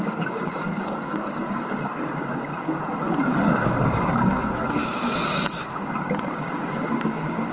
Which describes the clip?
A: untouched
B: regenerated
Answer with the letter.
B